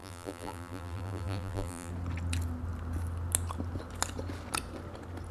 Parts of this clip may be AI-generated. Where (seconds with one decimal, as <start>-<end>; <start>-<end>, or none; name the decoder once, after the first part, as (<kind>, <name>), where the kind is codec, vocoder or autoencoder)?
0.0-1.9 (vocoder, BigVGAN v2)